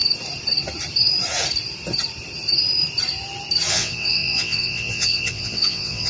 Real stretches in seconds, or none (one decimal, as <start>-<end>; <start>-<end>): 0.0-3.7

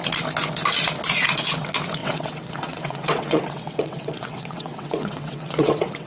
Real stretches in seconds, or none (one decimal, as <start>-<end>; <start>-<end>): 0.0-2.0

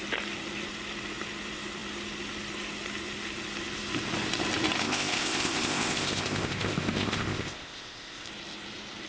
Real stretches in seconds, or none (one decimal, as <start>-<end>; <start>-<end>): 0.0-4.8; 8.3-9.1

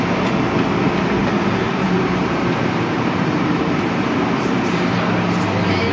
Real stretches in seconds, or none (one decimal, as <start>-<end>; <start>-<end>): 0.0-1.2; 4.7-5.9

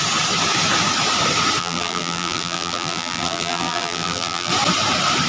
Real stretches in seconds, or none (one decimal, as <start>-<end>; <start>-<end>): 0.0-1.6; 4.5-5.3

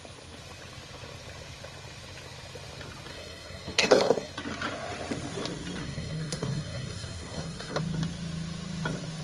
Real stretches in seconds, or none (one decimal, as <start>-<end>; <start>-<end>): 0.0-3.1; 4.3-5.8; 7.8-9.2

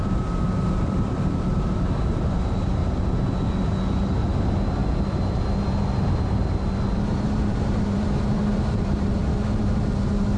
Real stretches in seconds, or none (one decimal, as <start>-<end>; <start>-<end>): 2.8-4.0; 4.8-7.1